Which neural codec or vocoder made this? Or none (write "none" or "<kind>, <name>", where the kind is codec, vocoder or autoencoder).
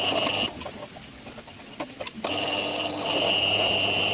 none